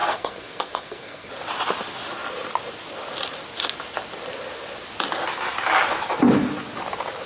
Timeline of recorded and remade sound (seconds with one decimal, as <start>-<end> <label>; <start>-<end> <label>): 0.0-1.3 remade; 1.3-7.3 recorded